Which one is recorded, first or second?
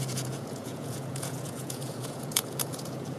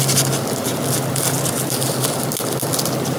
second